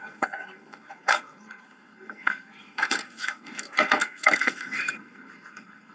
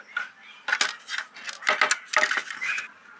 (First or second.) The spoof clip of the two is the first